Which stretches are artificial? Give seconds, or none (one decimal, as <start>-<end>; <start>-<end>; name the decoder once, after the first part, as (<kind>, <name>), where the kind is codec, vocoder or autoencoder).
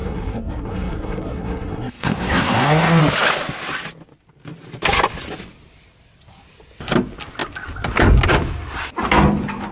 0.0-3.0 (codec, SNAC)